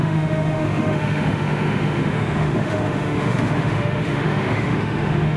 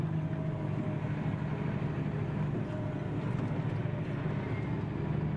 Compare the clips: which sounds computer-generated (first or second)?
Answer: first